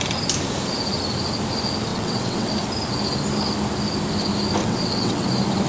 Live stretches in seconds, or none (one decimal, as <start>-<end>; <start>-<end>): 0.0-1.9; 2.5-4.6; 5.3-5.7